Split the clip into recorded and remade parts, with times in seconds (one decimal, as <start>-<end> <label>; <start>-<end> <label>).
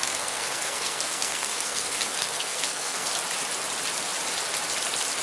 0.0-3.1 remade; 3.1-5.2 recorded